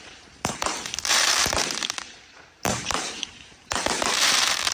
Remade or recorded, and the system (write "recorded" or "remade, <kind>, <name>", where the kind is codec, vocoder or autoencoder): remade, vocoder, BigVGAN v2